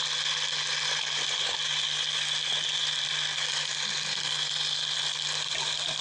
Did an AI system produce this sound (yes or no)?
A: no